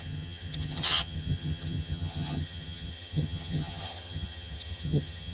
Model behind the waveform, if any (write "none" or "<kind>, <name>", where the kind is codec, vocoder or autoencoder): vocoder, HiFi-GAN